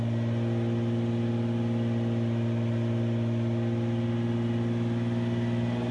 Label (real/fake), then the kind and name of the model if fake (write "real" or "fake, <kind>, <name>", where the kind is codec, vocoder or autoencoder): real